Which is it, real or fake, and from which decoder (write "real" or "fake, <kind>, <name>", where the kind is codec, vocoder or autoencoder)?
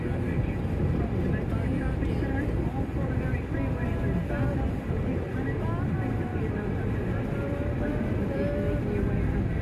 real